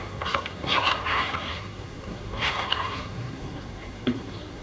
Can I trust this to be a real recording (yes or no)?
no